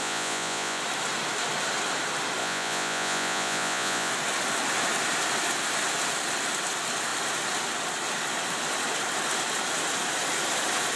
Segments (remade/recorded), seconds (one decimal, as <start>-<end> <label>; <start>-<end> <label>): 0.0-0.8 remade; 0.8-2.4 recorded; 2.4-4.1 remade; 4.1-11.0 recorded